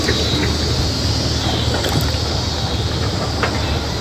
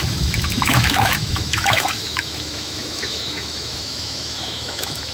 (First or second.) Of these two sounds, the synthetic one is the second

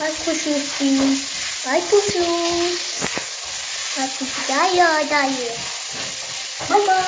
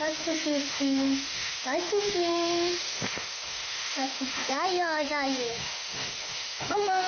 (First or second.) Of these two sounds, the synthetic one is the second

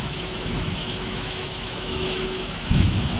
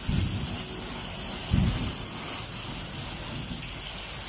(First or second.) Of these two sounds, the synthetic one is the first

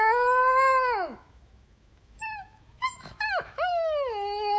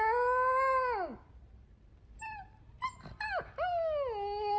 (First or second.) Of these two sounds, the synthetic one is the first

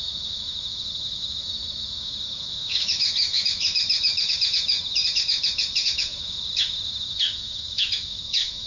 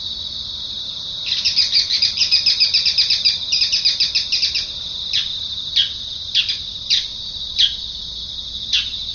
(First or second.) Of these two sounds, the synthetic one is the first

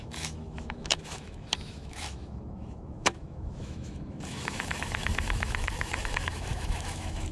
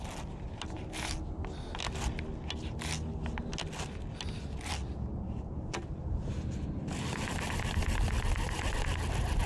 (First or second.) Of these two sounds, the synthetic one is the first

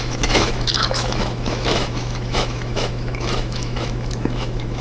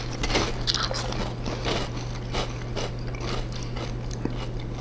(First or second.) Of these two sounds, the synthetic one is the first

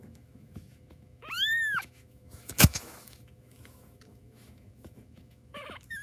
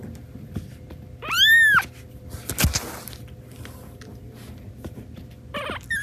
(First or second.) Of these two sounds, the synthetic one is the first